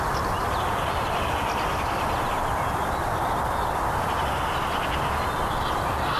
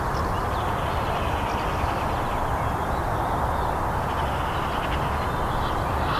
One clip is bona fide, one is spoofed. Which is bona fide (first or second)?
second